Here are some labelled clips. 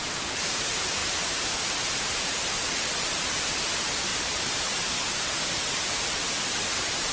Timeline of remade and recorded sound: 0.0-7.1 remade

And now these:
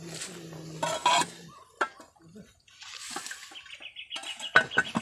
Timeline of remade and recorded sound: 0.0-5.0 recorded

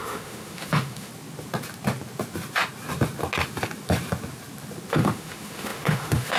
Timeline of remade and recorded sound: 0.0-1.1 remade; 1.1-4.9 recorded; 4.9-6.4 remade